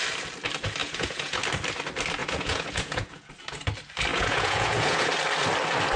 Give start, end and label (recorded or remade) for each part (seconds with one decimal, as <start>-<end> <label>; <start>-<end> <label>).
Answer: 0.0-0.8 recorded; 0.8-1.4 remade; 1.4-2.2 recorded; 2.2-3.3 remade; 3.3-4.1 recorded; 4.1-5.1 remade; 5.1-6.0 recorded